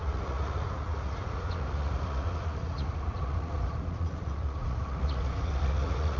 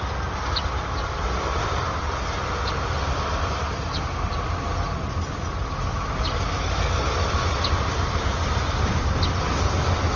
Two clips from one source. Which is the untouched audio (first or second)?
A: second